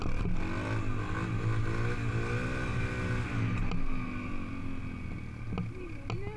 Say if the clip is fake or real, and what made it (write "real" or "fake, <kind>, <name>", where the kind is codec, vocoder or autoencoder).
real